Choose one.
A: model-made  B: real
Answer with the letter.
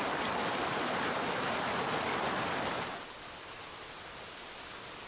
B